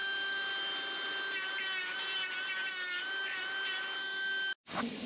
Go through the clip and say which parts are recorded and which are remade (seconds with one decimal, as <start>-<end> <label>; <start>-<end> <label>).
0.0-5.1 recorded